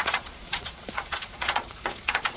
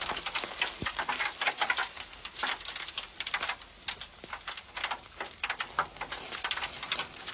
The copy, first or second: first